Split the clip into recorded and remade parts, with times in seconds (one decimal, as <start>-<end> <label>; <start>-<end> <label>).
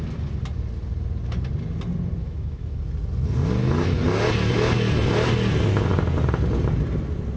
0.0-2.2 recorded; 2.2-2.8 remade; 2.8-7.4 recorded